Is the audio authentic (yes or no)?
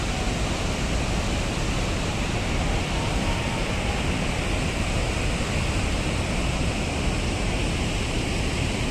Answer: yes